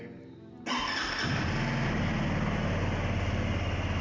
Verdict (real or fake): real